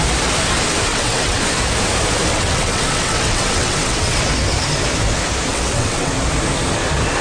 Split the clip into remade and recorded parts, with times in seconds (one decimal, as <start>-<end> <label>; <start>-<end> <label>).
0.0-0.9 recorded; 0.9-1.4 remade; 1.4-2.3 recorded; 2.3-4.3 remade; 4.3-5.5 recorded; 5.5-6.1 remade; 6.1-7.2 recorded